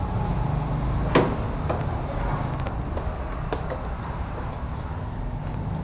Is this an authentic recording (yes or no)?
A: yes